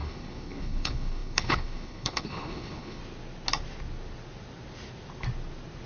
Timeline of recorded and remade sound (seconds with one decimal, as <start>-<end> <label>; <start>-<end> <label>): 0.0-3.0 remade; 3.0-5.9 recorded

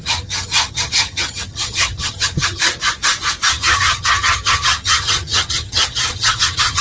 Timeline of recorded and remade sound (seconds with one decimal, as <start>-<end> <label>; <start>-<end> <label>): 0.0-2.6 remade; 2.6-3.5 recorded; 3.5-6.8 remade